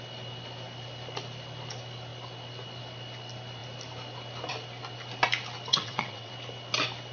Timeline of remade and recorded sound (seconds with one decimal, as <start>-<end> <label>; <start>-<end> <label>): 0.0-5.7 recorded; 5.7-6.3 remade; 6.3-7.1 recorded